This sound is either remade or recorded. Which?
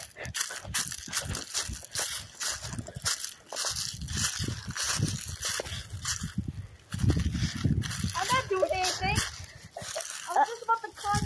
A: recorded